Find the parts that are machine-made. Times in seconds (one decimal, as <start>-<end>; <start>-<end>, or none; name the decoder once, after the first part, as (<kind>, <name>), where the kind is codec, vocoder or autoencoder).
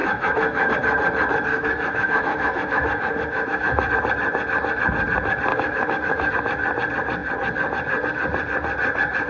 0.0-0.7 (autoencoder, DAC-VAE); 1.5-3.9; 5.5-6.3